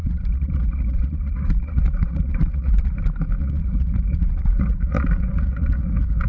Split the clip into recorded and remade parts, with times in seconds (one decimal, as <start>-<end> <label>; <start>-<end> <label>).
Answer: 0.0-3.0 remade; 3.0-3.4 recorded; 3.4-6.3 remade